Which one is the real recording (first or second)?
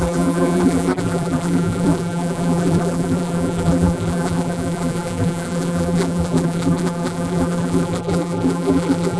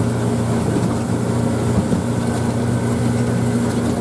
second